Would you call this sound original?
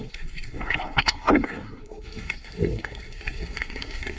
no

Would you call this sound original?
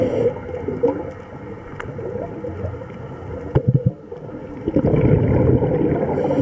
yes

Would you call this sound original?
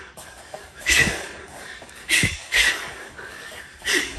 no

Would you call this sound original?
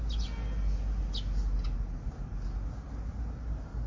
yes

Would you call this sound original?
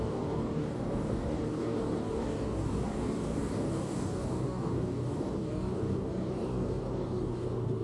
no